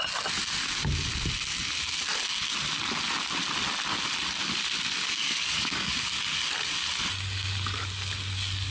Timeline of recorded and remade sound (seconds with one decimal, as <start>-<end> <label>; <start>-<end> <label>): 0.0-5.2 recorded; 5.2-6.2 remade; 6.2-8.7 recorded

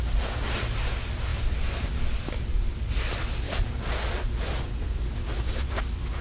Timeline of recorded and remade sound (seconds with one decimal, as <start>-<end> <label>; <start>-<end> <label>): 0.0-6.2 recorded